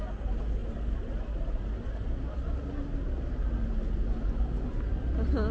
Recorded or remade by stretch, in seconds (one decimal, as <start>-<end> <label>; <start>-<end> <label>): 0.0-5.5 recorded